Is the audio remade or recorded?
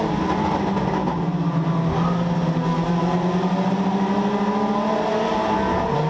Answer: recorded